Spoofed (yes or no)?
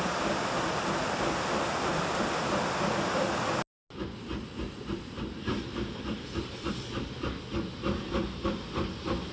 no